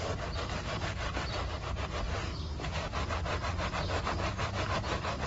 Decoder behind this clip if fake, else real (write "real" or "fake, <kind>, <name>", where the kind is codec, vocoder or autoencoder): real